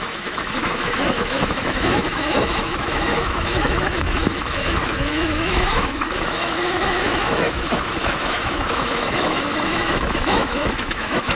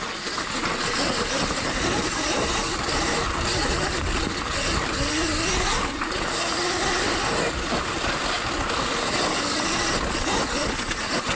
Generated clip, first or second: first